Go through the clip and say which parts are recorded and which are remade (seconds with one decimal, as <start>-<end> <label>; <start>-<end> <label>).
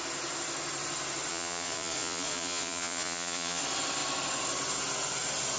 0.0-1.3 recorded; 1.3-3.6 remade; 3.6-5.6 recorded